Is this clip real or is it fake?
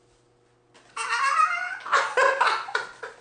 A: real